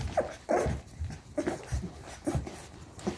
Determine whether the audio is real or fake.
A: real